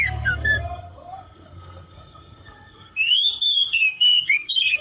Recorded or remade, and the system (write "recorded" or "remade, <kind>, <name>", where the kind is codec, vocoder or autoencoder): remade, codec, SNAC